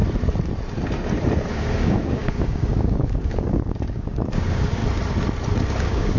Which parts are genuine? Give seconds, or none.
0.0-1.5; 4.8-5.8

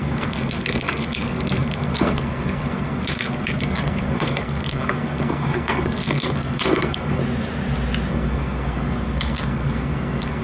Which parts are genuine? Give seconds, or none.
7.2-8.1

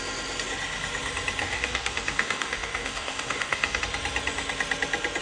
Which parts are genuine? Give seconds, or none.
0.0-1.4; 3.8-5.2

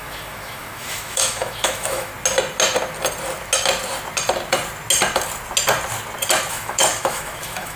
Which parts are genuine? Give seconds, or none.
2.1-6.5

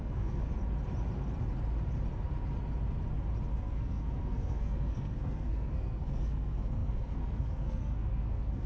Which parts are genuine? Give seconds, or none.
0.5-3.5

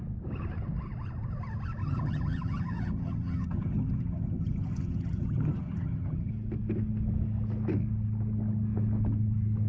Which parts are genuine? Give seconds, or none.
0.0-1.8; 6.3-9.7

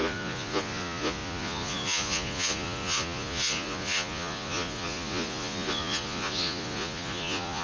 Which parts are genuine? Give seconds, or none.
none

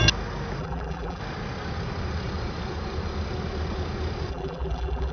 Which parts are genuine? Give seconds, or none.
0.0-0.6; 1.2-4.3